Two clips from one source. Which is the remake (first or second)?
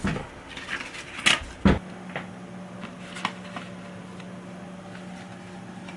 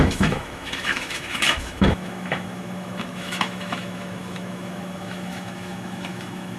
second